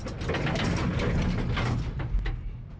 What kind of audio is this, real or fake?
real